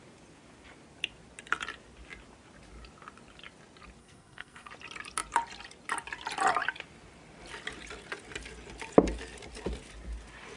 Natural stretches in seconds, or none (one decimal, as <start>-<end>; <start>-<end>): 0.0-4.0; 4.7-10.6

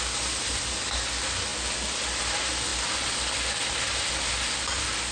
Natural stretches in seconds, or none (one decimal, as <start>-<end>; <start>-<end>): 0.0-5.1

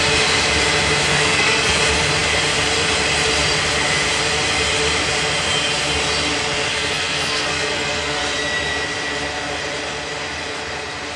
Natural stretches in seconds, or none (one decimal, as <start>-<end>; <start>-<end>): 0.0-1.1; 1.8-6.7; 8.2-11.2

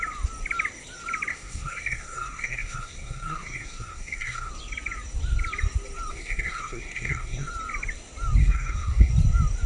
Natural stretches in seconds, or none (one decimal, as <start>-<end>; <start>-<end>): 0.0-1.3; 4.5-6.1; 7.5-8.4; 9.1-9.7

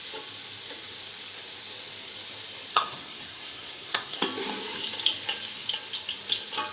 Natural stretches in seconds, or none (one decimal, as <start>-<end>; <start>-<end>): 0.0-2.7; 4.2-6.7

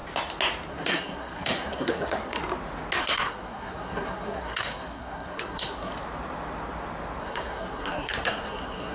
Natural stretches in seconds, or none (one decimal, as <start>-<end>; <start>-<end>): 0.0-0.7; 2.4-3.0; 5.9-7.2

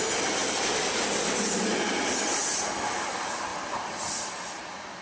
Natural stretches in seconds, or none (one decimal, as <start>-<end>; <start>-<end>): 0.0-5.0

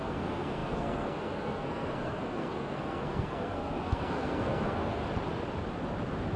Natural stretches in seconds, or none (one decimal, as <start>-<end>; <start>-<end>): 5.0-6.4